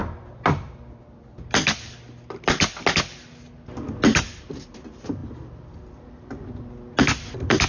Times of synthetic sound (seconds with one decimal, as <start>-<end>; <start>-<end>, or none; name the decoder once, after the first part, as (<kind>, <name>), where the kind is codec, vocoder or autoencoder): none